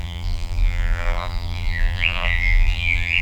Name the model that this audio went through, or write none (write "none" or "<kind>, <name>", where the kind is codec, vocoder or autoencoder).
vocoder, BigVGAN v2